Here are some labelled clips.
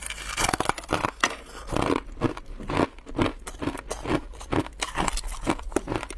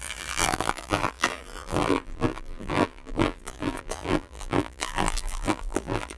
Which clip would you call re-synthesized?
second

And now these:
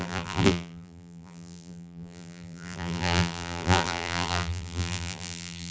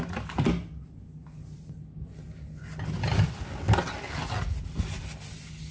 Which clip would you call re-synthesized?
first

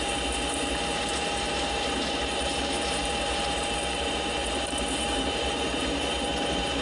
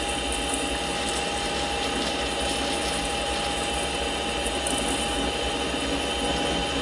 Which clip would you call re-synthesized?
first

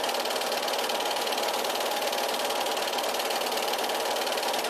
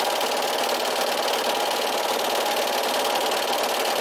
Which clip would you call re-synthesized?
first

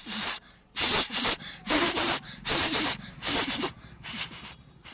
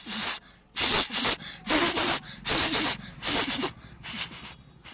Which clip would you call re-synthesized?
first